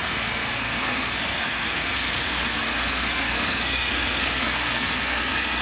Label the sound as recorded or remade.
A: remade